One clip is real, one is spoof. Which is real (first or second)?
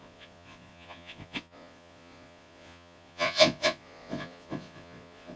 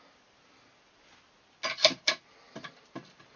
second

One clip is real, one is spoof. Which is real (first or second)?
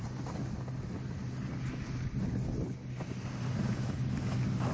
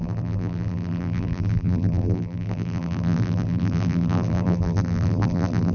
first